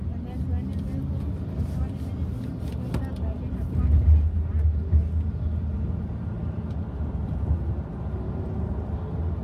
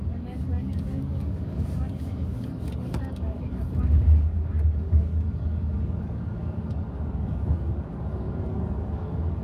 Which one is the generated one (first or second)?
second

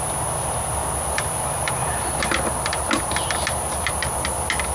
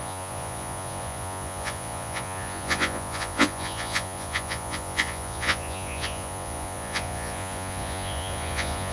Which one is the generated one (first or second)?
second